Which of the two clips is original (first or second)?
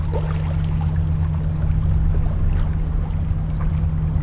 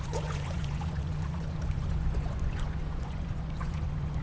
first